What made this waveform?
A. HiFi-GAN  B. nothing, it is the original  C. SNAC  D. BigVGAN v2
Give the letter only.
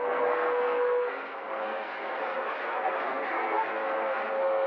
C